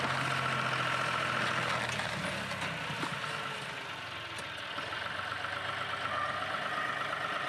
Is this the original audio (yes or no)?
yes